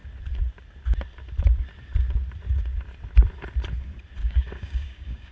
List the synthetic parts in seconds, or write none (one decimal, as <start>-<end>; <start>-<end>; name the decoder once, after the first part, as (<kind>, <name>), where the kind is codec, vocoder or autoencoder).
4.2-5.3 (codec, DAC)